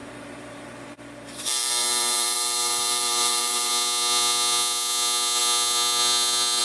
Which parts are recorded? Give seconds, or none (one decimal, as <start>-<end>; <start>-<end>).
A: 3.7-6.6